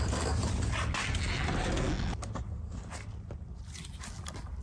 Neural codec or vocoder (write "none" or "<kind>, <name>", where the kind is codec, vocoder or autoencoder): none